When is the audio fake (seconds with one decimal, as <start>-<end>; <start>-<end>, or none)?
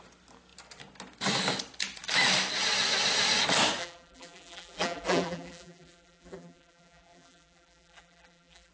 3.8-8.7